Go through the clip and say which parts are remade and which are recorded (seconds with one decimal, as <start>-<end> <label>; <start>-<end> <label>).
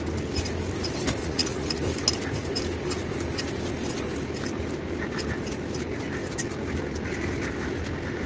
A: 0.0-1.2 recorded; 1.2-1.8 remade; 1.8-8.3 recorded